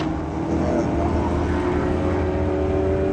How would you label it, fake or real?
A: real